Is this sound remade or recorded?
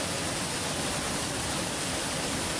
recorded